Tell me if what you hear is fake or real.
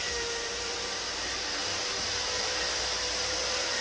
fake